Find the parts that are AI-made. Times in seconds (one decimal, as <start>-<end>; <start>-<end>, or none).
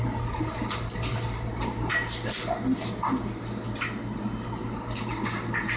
none